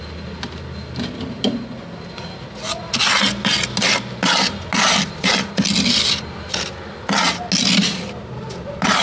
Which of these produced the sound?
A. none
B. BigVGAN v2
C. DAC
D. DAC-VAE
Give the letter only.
A